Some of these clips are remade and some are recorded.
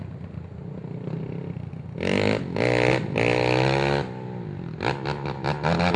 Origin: recorded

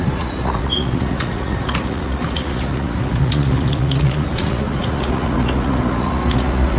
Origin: remade